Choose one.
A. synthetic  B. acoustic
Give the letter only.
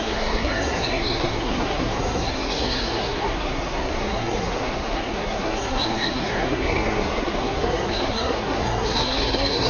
A